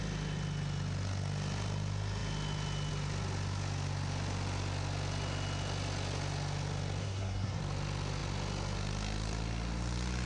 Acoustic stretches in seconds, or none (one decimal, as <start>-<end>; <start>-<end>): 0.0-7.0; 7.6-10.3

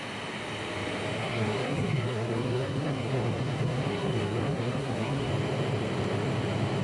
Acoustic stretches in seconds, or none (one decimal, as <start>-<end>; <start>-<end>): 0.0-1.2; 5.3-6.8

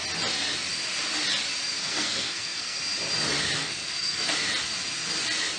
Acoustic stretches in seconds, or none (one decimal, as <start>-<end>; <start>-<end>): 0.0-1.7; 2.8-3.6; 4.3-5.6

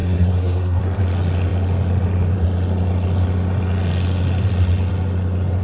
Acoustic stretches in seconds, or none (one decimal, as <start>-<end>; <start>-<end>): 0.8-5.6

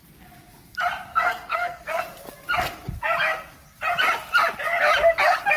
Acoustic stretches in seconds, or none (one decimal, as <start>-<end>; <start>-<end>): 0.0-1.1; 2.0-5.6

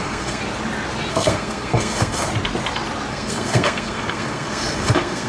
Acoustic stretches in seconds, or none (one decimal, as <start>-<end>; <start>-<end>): 0.4-1.1; 2.3-3.1

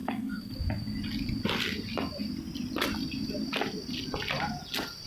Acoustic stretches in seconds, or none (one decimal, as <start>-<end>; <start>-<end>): 0.5-5.1